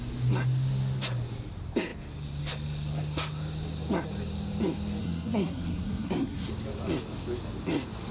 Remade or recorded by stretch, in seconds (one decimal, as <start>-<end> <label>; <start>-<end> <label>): 0.0-5.0 recorded; 5.0-6.5 remade; 6.5-8.1 recorded